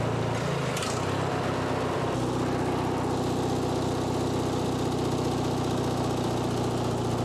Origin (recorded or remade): recorded